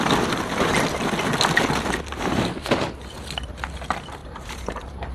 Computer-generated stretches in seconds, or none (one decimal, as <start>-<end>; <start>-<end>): 4.2-5.1